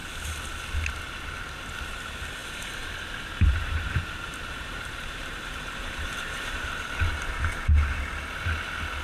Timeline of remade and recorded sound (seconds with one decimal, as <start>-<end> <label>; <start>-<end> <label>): 0.0-2.4 recorded; 2.4-7.6 remade; 7.6-9.0 recorded